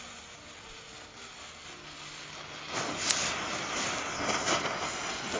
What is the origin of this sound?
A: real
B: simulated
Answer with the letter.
A